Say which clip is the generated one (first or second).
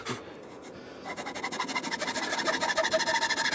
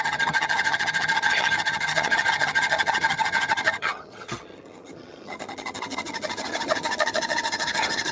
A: second